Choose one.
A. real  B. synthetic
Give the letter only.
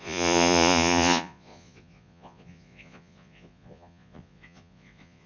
B